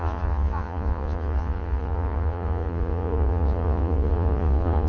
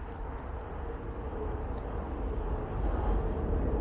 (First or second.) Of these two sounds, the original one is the second